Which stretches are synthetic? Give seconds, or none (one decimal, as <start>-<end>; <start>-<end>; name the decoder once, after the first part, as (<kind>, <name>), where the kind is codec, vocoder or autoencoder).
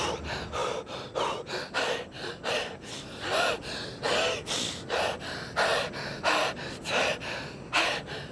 none